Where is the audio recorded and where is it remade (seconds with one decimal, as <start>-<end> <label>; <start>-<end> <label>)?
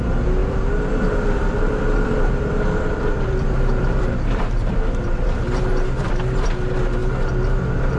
0.0-0.4 recorded; 0.4-4.8 remade; 4.8-8.0 recorded